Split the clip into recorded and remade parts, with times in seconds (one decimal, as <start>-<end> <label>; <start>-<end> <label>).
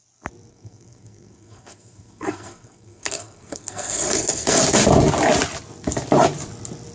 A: 0.0-0.5 recorded; 0.5-4.6 remade; 4.6-6.9 recorded